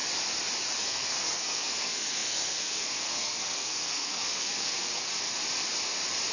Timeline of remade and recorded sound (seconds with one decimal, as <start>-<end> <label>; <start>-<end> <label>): 0.0-0.8 recorded; 0.8-5.1 remade; 5.1-6.3 recorded